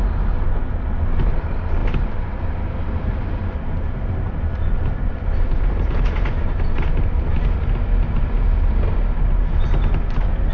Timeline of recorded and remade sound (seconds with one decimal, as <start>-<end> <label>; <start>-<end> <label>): 0.0-10.5 recorded